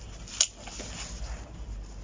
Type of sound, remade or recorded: recorded